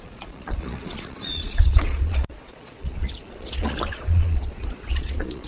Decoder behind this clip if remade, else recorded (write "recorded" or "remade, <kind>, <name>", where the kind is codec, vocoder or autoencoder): remade, vocoder, Vocos